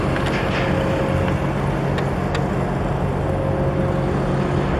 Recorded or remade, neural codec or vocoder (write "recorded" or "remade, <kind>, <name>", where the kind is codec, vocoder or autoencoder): recorded